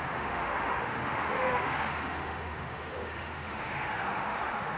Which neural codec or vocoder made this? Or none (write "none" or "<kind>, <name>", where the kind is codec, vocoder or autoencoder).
autoencoder, DAC-VAE